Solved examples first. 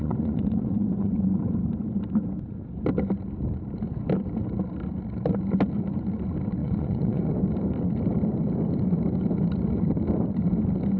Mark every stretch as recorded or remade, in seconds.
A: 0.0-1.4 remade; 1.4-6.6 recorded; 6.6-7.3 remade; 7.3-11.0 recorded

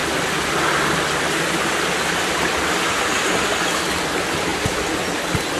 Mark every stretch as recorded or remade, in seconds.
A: 0.0-5.6 recorded